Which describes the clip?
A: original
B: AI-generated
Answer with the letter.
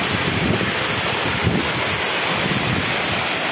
A